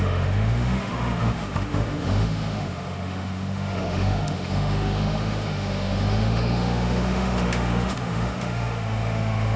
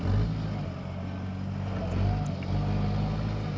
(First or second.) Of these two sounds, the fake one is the first